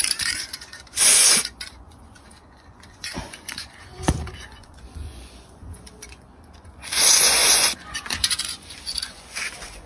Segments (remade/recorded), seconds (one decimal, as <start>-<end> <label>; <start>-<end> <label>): 0.0-9.9 remade